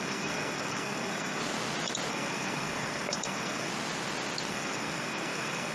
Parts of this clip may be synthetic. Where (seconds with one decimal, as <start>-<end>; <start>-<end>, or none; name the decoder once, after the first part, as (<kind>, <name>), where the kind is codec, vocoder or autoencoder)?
0.0-1.4 (codec, SNAC); 2.1-3.7; 4.5-5.7